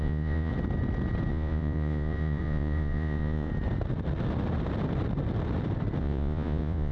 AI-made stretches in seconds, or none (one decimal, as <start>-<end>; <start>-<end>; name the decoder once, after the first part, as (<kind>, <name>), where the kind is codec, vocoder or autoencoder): 0.0-0.5 (vocoder, Vocos); 1.3-3.5; 6.0-6.9